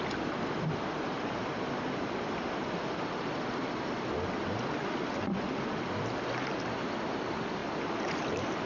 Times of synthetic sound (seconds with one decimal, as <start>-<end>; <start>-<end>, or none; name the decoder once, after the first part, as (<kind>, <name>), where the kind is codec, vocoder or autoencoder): 7.6-8.7 (vocoder, BigVGAN v2)